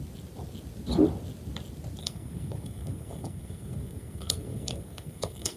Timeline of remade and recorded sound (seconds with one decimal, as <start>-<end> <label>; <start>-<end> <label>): 0.0-2.0 recorded; 2.0-5.6 remade